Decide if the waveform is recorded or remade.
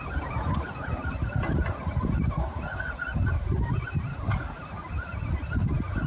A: recorded